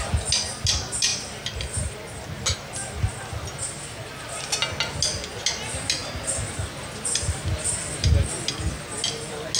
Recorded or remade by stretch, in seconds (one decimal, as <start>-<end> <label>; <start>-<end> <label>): 0.0-6.0 recorded; 6.0-8.1 remade; 8.1-9.6 recorded